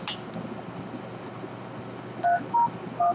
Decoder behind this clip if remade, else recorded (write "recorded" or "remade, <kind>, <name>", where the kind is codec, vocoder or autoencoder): recorded